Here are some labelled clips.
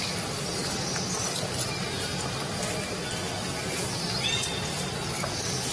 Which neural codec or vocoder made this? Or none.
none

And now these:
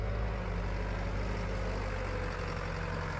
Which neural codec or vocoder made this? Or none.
none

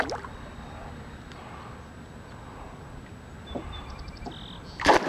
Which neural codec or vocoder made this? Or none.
none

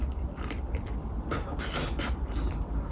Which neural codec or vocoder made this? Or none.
none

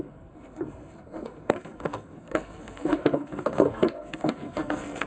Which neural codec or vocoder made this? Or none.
codec, SNAC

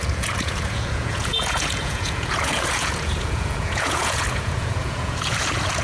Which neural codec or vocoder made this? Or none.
vocoder, Vocos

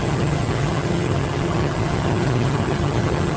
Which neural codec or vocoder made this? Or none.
vocoder, HiFi-GAN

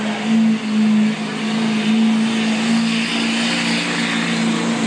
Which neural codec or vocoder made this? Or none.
none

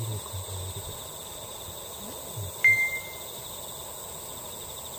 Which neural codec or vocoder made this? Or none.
none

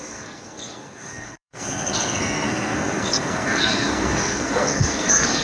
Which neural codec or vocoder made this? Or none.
codec, SNAC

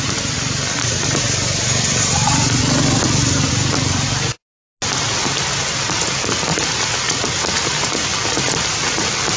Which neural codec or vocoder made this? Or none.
none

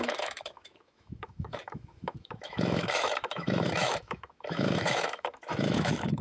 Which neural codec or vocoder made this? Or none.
autoencoder, DAC-VAE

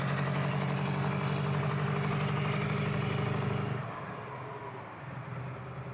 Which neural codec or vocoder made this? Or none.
none